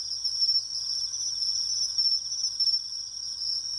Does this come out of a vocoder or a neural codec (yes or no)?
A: no